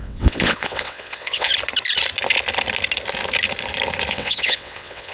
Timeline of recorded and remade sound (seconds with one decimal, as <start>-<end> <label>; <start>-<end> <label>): 0.0-1.5 remade; 1.5-4.1 recorded; 4.1-5.1 remade